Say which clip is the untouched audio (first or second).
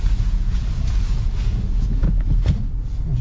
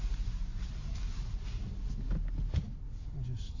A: second